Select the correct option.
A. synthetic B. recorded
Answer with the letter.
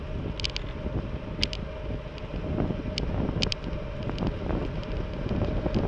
B